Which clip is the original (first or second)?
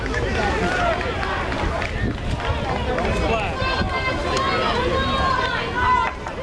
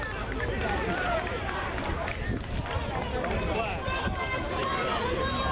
first